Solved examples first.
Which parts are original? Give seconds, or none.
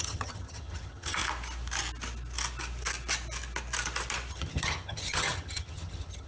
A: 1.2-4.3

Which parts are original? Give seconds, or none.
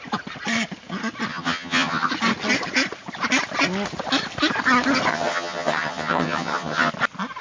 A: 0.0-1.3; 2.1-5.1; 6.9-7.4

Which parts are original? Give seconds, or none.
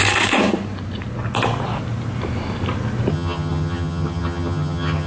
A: 0.0-3.1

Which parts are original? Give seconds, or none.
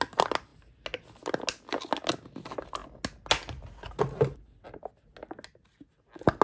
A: 0.0-6.4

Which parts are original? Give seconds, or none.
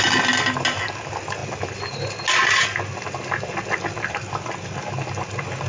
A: 0.0-5.7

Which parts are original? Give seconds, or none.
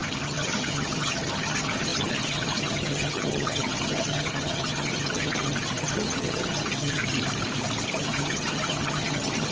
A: 7.0-8.0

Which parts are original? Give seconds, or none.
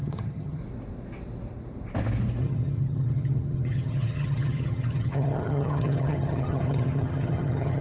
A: 0.6-2.4